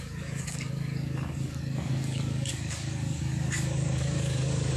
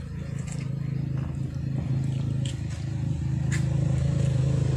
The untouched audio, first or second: second